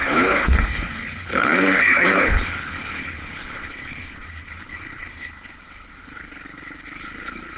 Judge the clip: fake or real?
fake